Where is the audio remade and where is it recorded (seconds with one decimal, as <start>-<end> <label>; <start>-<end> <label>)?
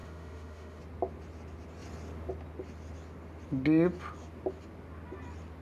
0.0-0.8 remade; 0.8-5.6 recorded